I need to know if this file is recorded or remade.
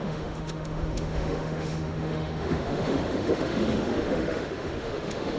remade